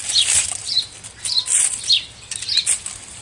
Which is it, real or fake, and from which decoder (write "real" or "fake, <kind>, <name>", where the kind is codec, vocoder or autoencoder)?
real